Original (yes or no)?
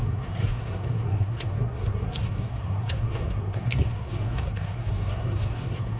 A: no